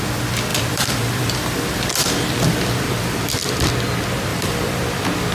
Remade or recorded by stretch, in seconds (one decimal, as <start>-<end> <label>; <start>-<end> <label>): 0.0-0.5 recorded; 0.5-3.7 remade; 3.7-4.3 recorded; 4.3-4.8 remade; 4.8-5.3 recorded